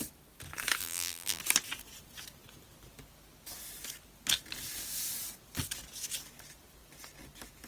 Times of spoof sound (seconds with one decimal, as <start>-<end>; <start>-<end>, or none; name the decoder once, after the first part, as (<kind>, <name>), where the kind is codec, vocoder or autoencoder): 0.8-1.4 (vocoder, BigVGAN v2)

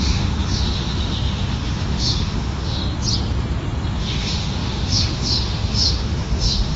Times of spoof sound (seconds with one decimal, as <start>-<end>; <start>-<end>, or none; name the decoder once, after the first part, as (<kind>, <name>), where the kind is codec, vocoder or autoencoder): 0.0-2.8 (autoencoder, DAC-VAE); 4.0-6.8